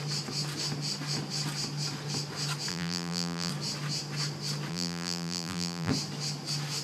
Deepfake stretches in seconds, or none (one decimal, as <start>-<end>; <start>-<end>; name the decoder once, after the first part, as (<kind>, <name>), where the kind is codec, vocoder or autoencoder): 2.7-3.5 (vocoder, BigVGAN v2); 4.7-5.9